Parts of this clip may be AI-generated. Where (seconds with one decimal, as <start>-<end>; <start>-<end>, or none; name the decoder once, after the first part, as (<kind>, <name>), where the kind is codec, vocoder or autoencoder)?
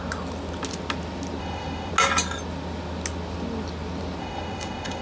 1.4-1.9 (autoencoder, DAC-VAE); 4.2-5.0